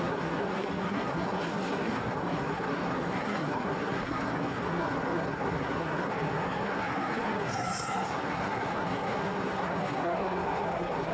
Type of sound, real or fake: fake